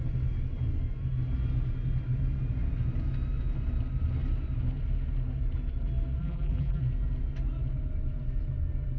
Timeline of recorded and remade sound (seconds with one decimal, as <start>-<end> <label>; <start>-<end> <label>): 0.0-6.2 recorded; 6.2-6.8 remade; 6.8-9.0 recorded